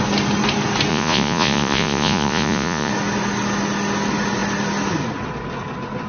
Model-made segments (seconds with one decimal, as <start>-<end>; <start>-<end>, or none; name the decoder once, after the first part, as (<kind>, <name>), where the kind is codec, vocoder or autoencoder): 0.9-2.9 (vocoder, Vocos)